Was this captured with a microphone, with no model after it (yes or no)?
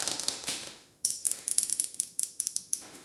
no